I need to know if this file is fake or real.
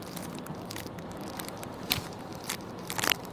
fake